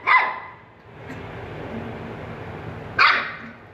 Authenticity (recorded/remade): recorded